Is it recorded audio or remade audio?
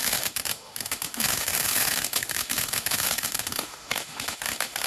remade